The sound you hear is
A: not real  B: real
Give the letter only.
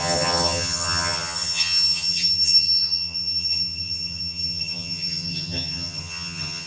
A